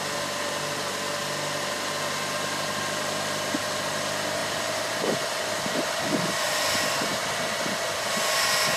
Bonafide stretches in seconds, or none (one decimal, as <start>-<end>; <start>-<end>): 0.0-4.4; 5.4-8.8